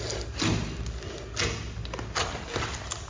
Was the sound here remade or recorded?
recorded